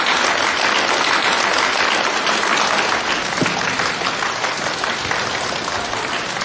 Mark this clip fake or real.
real